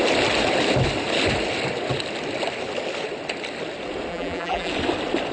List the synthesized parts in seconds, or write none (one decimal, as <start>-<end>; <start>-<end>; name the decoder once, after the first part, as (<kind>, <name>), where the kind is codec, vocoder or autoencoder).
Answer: 4.1-4.7 (vocoder, BigVGAN v2)